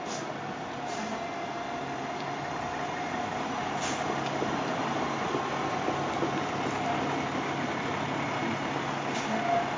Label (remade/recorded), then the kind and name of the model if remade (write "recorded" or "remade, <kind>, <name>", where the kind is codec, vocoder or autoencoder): recorded